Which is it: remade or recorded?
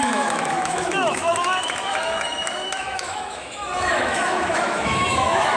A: remade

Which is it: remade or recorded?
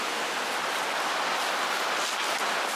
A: recorded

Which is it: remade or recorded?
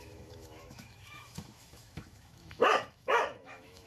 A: remade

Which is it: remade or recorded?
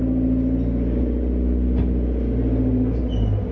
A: recorded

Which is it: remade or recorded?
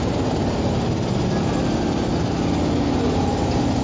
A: recorded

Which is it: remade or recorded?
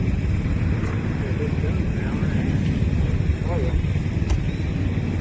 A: recorded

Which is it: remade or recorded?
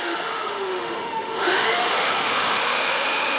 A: remade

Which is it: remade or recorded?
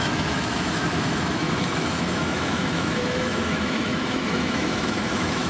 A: remade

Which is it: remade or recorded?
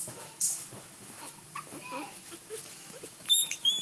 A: remade